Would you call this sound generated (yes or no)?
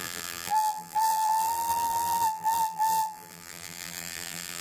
yes